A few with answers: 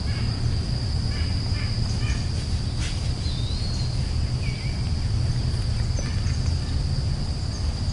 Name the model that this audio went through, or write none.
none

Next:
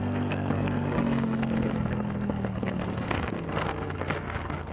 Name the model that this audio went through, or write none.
codec, SNAC